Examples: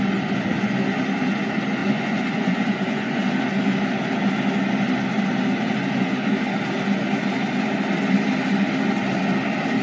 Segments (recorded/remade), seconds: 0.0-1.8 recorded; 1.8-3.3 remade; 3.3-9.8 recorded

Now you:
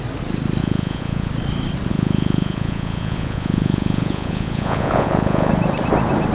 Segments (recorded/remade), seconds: 0.0-0.6 recorded; 0.6-1.3 remade; 1.3-1.9 recorded; 1.9-5.5 remade; 5.5-6.3 recorded

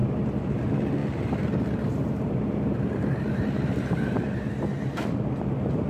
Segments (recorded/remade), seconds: 0.0-0.6 remade; 0.6-1.0 recorded; 1.0-4.5 remade; 4.5-5.9 recorded

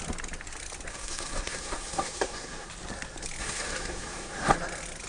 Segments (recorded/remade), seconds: 0.0-0.9 recorded; 0.9-2.7 remade; 2.7-3.4 recorded; 3.4-4.5 remade; 4.5-5.1 recorded

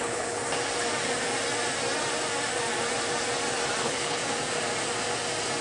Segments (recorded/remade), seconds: 0.0-0.4 remade; 0.4-3.8 recorded; 3.8-4.2 remade; 4.2-5.6 recorded

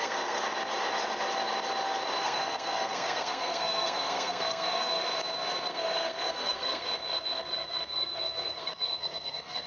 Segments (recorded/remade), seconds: 0.0-0.4 remade; 0.4-2.2 recorded; 2.2-5.1 remade; 5.1-5.7 recorded; 5.7-9.7 remade

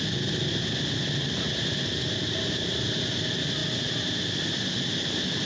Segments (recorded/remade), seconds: 0.0-5.5 recorded